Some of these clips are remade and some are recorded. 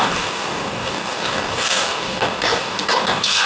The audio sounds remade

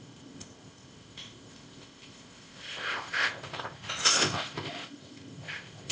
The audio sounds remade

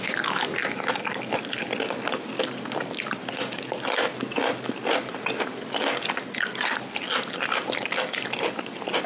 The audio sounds recorded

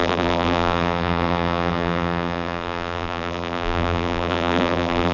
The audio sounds remade